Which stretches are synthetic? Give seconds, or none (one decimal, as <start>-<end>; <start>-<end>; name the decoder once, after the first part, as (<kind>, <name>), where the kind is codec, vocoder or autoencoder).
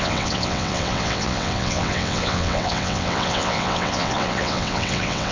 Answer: 0.0-5.3 (vocoder, WaveNeXt)